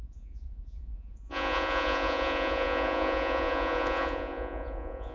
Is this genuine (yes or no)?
no